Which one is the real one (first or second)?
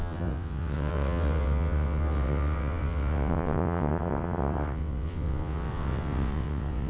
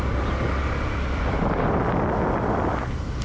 second